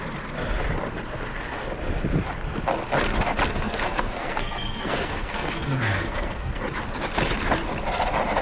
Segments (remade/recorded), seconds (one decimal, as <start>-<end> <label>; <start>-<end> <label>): 0.0-3.5 recorded; 3.5-6.6 remade; 6.6-8.4 recorded